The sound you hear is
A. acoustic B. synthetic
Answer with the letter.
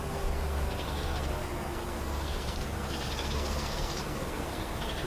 B